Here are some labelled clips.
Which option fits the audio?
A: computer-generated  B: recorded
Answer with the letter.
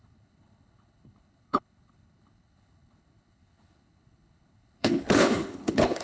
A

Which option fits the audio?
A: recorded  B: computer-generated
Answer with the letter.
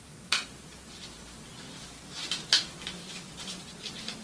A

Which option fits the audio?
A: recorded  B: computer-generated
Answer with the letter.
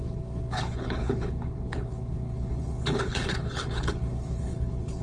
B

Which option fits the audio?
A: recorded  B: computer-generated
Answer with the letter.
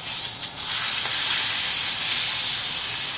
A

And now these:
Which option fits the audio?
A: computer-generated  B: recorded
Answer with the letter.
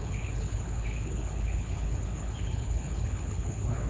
A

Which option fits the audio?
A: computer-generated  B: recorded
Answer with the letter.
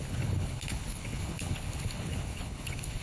A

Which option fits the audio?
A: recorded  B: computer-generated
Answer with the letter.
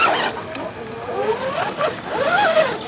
A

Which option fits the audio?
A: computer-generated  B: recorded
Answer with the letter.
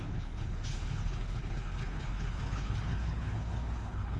A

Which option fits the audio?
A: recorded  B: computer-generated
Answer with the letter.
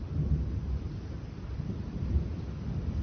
A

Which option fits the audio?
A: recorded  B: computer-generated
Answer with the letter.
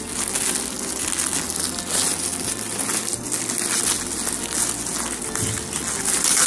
A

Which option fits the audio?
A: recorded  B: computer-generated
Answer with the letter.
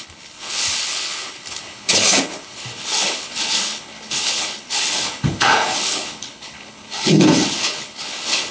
B